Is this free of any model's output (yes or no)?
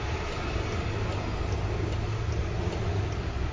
yes